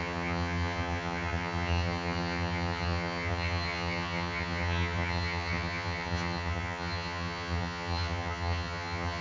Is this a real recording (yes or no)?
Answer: no